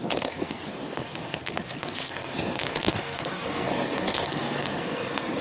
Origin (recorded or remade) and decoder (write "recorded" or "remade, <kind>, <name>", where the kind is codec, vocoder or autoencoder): remade, codec, SNAC